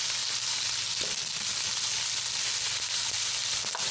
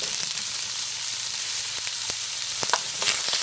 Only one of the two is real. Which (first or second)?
first